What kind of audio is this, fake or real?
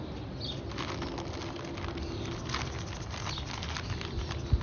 real